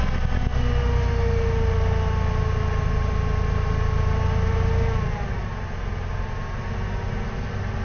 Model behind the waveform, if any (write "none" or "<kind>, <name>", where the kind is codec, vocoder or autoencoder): none